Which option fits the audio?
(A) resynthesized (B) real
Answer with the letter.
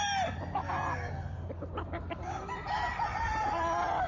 B